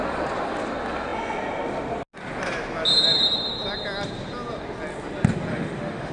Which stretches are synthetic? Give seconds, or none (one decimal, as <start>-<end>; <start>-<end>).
5.5-6.1

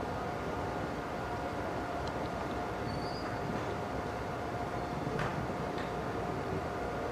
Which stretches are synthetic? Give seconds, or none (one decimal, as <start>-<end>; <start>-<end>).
none

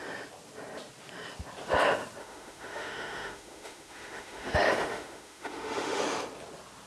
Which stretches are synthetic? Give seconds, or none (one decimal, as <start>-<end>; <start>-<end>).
2.2-6.0

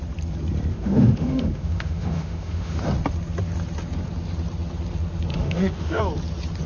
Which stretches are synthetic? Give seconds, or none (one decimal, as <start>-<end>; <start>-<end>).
0.7-2.8; 5.3-6.0

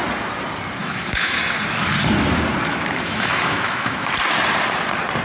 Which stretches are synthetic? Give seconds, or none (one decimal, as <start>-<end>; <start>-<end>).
0.8-1.4; 2.7-4.1

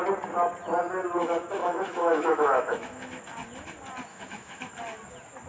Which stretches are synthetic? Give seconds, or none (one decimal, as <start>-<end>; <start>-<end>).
1.6-3.2; 4.1-4.7

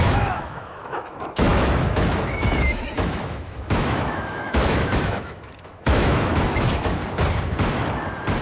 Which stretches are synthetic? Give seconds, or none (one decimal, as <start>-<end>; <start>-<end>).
0.0-7.0

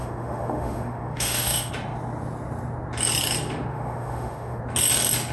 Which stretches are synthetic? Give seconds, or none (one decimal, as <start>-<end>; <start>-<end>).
0.0-1.7; 3.7-4.6